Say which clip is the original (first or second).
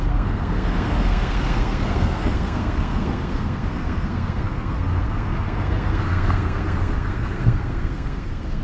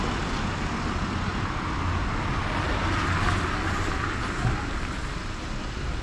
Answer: second